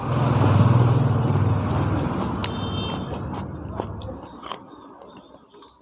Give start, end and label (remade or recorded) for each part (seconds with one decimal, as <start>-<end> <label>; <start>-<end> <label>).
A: 0.0-5.8 recorded

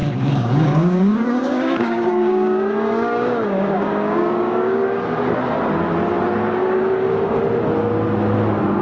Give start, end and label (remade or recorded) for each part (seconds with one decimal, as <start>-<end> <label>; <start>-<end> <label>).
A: 0.0-4.8 remade; 4.8-6.6 recorded; 6.6-7.4 remade; 7.4-8.8 recorded

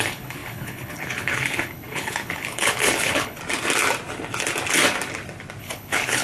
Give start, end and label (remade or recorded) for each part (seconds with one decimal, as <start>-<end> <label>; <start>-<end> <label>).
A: 0.0-3.4 remade; 3.4-5.6 recorded; 5.6-6.2 remade

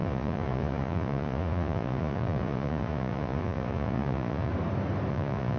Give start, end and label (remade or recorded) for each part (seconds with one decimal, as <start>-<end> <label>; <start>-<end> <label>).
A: 0.0-4.5 remade; 4.5-5.1 recorded; 5.1-5.6 remade

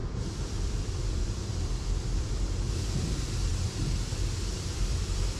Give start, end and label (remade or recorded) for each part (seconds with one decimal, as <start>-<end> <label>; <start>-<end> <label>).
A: 0.0-2.7 remade; 2.7-4.5 recorded; 4.5-5.4 remade

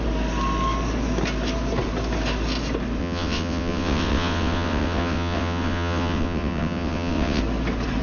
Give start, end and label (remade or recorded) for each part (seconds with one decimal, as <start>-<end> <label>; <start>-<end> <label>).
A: 0.0-3.0 recorded; 3.0-7.4 remade; 7.4-8.0 recorded